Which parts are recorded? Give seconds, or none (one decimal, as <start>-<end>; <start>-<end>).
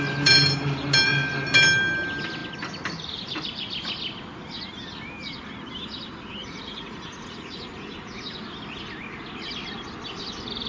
0.0-6.4; 7.7-10.7